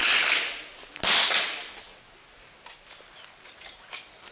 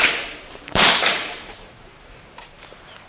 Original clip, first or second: first